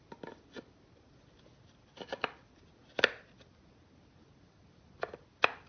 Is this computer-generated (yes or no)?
no